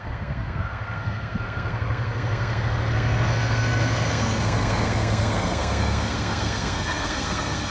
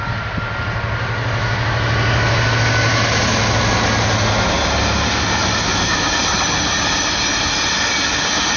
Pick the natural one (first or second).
second